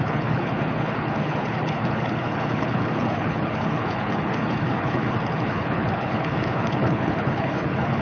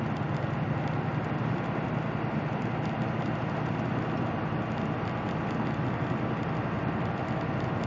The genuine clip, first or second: second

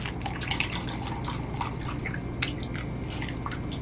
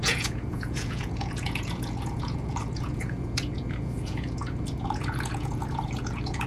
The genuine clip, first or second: first